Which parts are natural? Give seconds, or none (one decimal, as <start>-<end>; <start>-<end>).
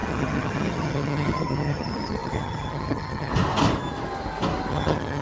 3.3-4.7